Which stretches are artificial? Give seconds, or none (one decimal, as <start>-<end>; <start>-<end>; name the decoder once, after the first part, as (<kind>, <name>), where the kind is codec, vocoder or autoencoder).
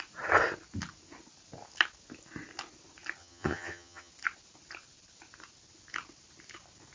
3.2-4.1 (vocoder, HiFi-GAN)